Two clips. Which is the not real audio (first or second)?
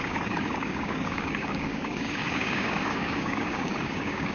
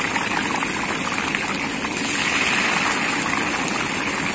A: first